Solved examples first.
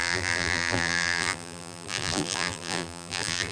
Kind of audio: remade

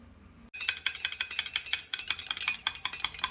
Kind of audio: recorded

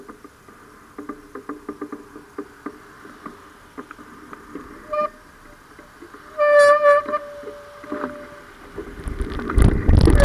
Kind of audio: recorded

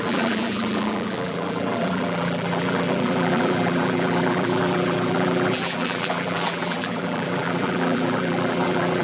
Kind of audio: remade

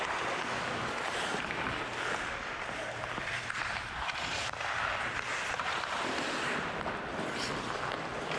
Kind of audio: remade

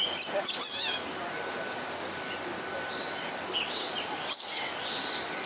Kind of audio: recorded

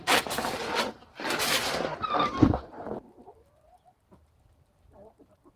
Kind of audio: remade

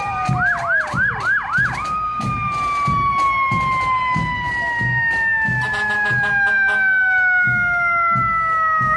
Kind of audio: recorded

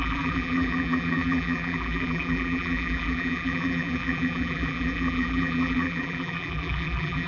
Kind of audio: remade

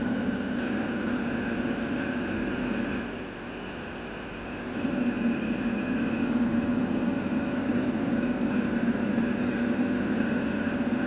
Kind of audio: recorded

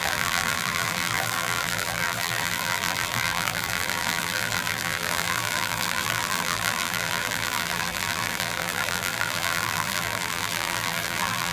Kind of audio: remade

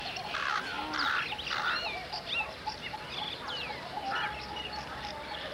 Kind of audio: remade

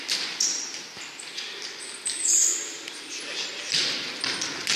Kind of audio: recorded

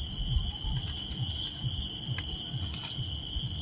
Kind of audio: recorded